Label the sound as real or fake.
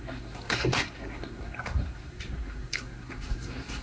fake